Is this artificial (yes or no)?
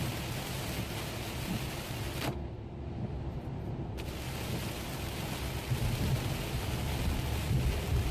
no